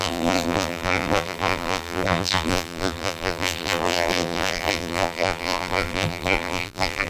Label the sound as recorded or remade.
remade